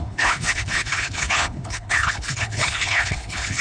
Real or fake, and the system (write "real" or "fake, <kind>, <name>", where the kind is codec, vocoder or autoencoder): fake, codec, HILCodec